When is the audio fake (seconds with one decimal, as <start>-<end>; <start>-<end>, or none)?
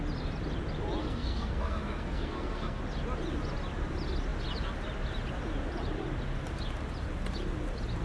1.0-2.8